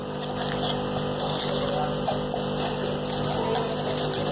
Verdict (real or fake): real